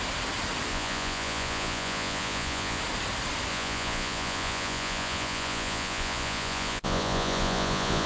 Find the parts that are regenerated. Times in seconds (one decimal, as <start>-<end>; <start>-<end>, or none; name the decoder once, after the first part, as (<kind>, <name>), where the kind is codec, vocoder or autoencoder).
0.7-2.8 (vocoder, Vocos); 3.5-8.1